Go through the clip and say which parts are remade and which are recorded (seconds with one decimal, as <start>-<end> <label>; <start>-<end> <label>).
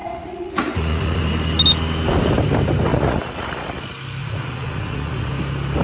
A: 0.0-1.2 remade; 1.2-2.9 recorded; 2.9-3.8 remade; 3.8-4.2 recorded; 4.2-5.3 remade; 5.3-5.8 recorded